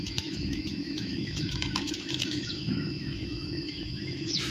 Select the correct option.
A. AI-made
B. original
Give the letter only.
A